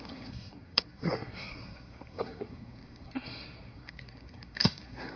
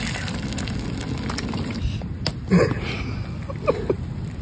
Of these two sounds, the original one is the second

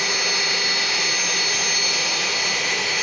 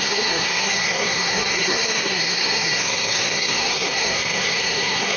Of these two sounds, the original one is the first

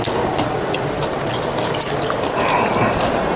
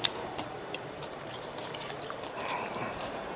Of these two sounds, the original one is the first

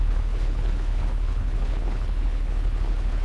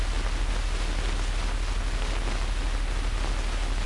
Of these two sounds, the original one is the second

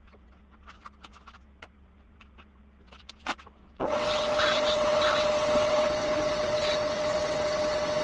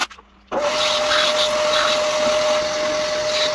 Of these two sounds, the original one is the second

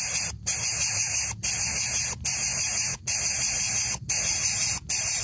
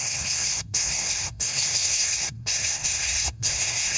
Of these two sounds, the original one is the first